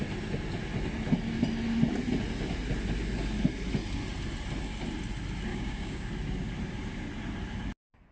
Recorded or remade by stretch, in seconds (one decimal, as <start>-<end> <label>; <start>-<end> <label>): 0.0-5.5 recorded; 5.5-6.1 remade; 6.1-8.1 recorded